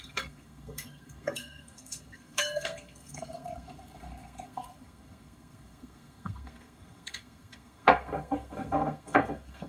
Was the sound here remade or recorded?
remade